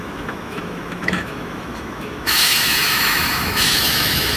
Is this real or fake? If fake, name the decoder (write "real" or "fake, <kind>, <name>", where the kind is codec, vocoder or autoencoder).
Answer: fake, autoencoder, DAC-VAE